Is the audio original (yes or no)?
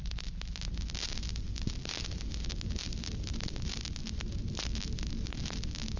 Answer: yes